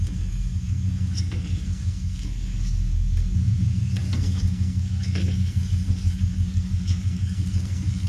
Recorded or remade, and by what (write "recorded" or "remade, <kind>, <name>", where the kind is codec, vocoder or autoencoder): remade, codec, SNAC